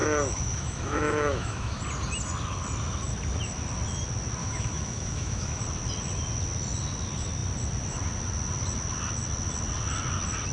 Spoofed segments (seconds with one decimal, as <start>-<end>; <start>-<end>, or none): 0.0-1.8; 4.4-5.6